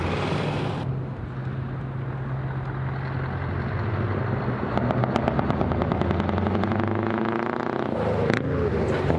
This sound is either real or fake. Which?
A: real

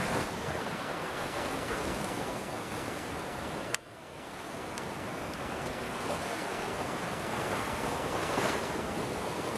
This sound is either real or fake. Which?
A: fake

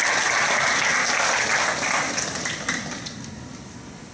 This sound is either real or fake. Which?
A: real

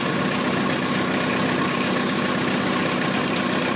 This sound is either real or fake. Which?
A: real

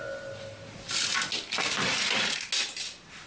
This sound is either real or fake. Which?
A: real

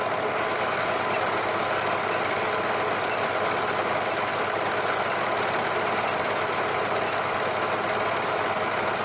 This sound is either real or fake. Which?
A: real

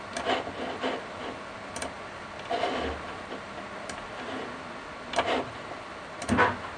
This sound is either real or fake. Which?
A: real